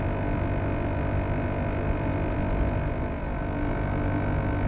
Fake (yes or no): no